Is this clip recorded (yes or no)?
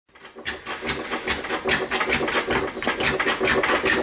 yes